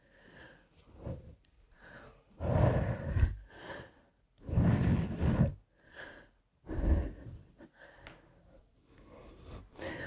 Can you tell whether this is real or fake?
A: real